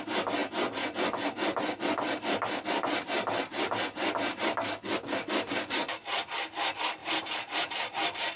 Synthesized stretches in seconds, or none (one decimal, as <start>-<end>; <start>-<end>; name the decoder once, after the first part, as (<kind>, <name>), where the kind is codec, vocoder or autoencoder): 7.0-8.4 (vocoder, BigVGAN v2)